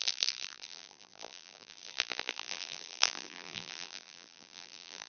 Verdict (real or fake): fake